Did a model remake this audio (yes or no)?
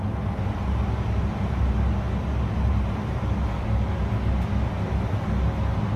no